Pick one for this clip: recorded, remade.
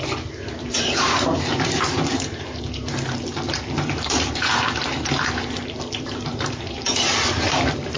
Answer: remade